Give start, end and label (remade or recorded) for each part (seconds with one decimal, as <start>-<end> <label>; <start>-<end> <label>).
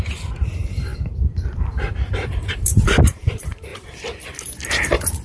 0.0-3.7 remade; 3.7-4.7 recorded; 4.7-5.2 remade